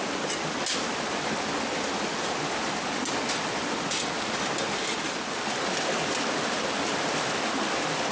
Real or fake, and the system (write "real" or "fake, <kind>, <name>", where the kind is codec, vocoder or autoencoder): real